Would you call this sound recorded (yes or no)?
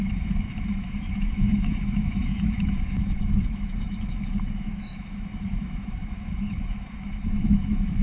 no